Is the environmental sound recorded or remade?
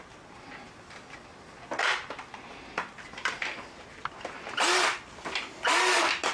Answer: recorded